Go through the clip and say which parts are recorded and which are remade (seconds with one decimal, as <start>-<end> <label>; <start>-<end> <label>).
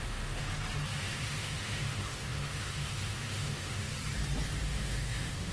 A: 0.0-0.5 remade; 0.5-1.0 recorded; 1.0-3.9 remade; 3.9-4.6 recorded; 4.6-5.5 remade